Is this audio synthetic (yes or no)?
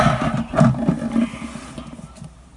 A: no